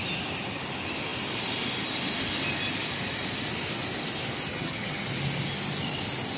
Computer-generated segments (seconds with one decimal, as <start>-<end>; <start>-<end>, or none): 4.5-5.1